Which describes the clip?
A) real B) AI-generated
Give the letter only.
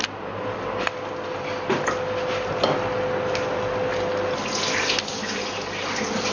A